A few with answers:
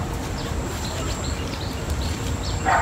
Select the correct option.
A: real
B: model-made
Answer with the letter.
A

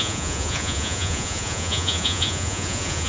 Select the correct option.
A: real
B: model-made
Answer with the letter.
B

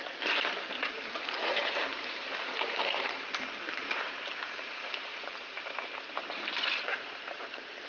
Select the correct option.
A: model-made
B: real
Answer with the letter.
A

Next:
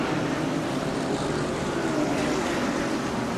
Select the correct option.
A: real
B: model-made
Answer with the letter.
B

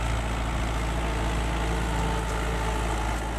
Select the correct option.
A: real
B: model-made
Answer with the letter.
A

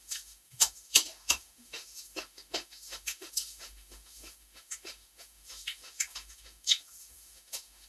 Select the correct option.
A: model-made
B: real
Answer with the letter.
A